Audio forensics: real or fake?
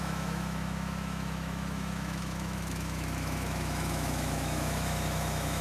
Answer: fake